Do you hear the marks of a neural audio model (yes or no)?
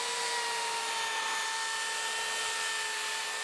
no